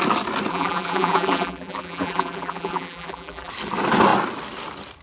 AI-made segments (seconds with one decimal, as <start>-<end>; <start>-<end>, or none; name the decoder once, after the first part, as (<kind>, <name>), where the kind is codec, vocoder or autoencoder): 0.5-3.5 (vocoder, BigVGAN v2)